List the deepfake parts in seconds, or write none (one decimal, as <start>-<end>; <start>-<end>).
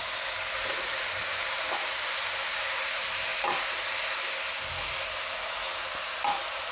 0.7-3.3